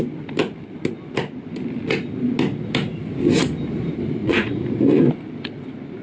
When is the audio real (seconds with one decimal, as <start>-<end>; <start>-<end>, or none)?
0.0-4.2; 5.0-6.0